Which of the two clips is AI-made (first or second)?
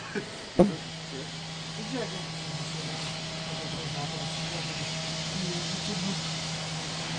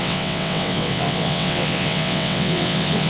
second